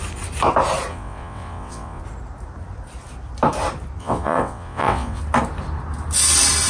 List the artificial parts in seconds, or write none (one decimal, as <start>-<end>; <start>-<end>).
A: 0.9-2.0; 4.0-5.2